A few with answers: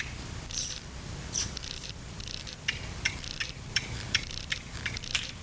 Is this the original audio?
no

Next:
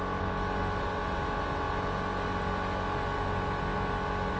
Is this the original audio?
yes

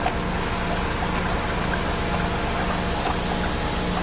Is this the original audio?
yes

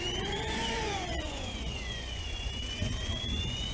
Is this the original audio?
no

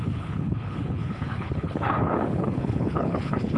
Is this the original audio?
no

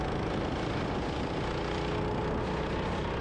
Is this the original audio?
yes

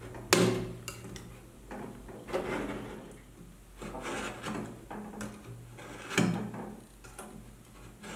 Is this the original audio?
yes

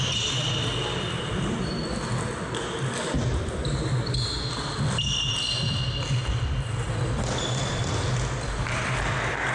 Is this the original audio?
yes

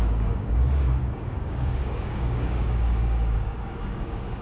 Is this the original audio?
no